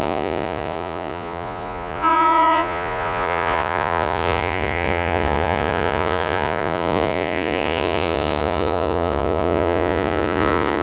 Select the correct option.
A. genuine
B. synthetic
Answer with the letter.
B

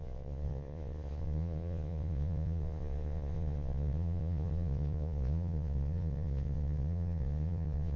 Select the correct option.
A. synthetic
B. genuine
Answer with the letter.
A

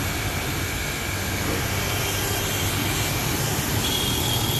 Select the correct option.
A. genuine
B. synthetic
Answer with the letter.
A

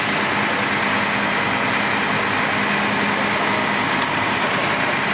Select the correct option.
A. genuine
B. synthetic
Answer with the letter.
A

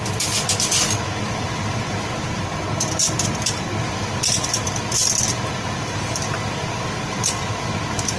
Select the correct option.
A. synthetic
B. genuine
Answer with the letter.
B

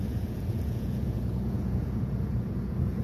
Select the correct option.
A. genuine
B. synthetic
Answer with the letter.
B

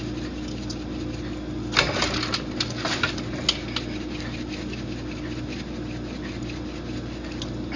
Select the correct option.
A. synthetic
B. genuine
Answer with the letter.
B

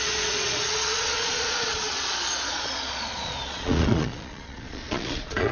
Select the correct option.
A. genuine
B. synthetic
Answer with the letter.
B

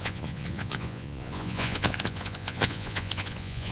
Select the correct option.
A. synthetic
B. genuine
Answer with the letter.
A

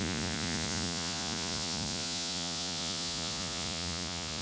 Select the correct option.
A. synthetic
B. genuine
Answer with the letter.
A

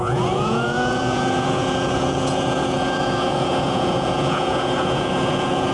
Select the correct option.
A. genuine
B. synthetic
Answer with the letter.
B